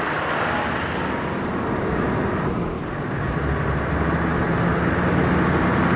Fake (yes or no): no